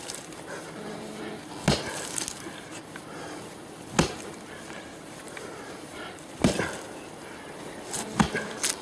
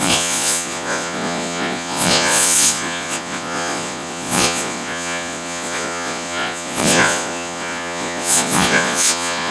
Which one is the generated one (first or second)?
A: second